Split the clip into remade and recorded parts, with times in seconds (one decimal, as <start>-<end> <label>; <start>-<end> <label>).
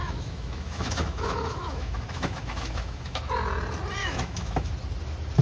0.0-3.2 remade; 3.2-4.0 recorded; 4.0-4.7 remade; 4.7-5.4 recorded